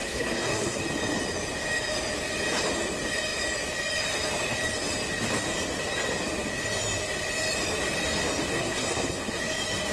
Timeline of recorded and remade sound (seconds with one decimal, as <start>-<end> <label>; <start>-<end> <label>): 0.0-0.8 remade; 0.8-8.5 recorded; 8.5-9.4 remade; 9.4-9.9 recorded